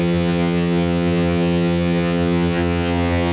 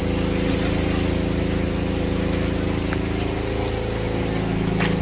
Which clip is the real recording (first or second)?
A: second